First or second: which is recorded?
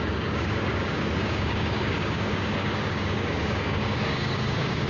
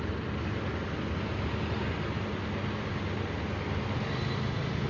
second